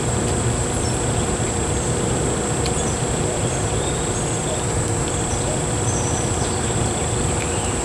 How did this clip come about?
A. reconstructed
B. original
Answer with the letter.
A